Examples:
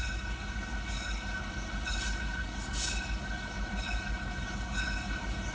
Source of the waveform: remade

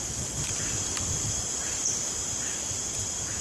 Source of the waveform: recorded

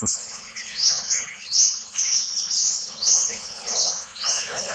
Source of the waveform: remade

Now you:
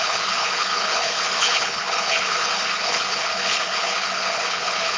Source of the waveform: remade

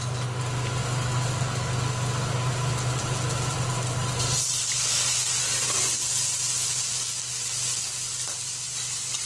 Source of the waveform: recorded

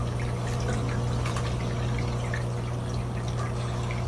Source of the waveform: recorded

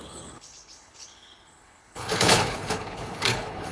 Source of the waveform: remade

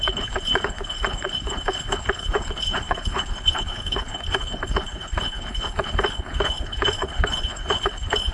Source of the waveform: remade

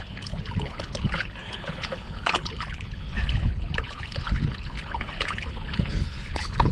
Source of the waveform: remade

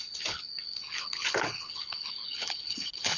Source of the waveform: remade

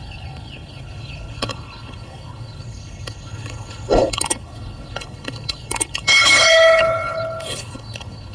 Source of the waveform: remade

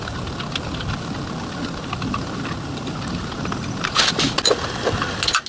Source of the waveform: recorded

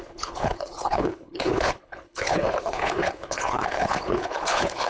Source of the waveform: remade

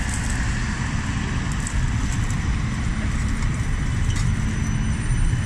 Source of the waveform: recorded